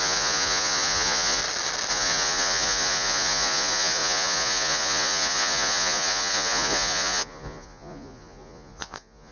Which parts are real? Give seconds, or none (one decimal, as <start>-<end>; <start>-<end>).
1.4-1.9